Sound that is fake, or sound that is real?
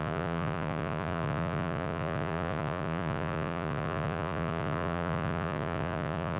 fake